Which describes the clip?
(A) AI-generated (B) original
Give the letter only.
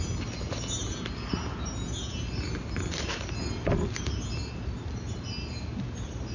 B